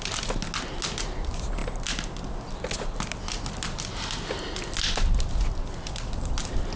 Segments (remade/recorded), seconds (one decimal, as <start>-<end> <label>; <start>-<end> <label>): 0.0-6.8 recorded